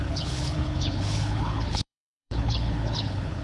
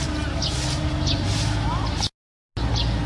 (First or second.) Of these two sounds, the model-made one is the first